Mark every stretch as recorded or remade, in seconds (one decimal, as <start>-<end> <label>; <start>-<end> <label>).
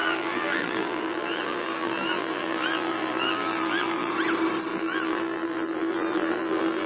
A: 0.0-4.1 remade; 4.1-4.7 recorded; 4.7-6.9 remade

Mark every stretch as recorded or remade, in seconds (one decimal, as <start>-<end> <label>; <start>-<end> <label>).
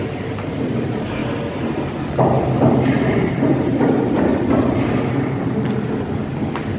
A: 0.0-1.2 remade; 1.2-2.7 recorded; 2.7-4.3 remade; 4.3-6.8 recorded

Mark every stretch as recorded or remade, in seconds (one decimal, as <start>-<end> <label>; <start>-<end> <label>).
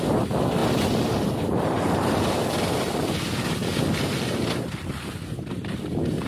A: 0.0-0.6 recorded; 0.6-2.1 remade; 2.1-6.3 recorded